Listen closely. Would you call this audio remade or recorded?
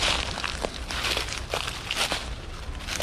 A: recorded